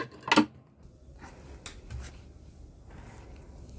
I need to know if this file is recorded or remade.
recorded